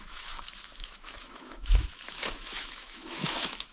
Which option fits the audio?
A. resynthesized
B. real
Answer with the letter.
A